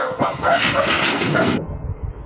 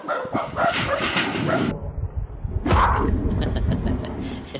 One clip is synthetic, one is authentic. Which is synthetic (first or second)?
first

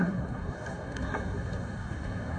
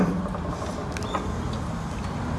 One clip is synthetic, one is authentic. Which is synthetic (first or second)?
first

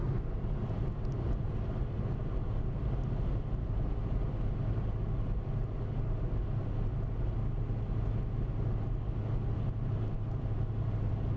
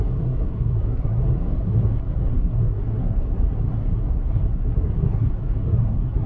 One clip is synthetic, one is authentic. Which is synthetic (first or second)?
second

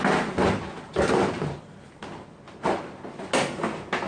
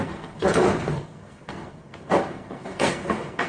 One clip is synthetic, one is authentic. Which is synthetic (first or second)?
second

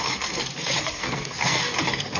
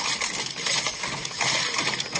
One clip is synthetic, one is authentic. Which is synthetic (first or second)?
first